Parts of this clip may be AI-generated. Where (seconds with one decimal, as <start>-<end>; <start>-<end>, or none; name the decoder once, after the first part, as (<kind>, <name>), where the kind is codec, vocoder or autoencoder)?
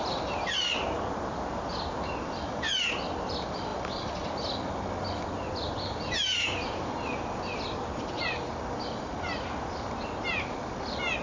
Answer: none